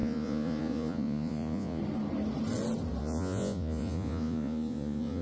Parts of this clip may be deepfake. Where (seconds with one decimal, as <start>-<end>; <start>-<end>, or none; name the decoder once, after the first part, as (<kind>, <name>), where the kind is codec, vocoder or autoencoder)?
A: 0.0-1.8 (vocoder, Vocos); 3.0-5.2